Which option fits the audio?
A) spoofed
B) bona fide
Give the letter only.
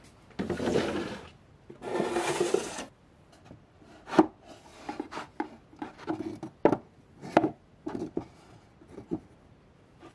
B